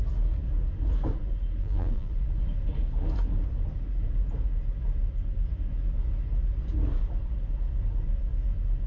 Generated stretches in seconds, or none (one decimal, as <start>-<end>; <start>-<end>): 1.6-2.1